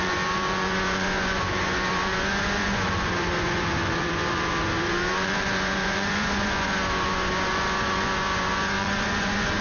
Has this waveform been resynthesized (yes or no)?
yes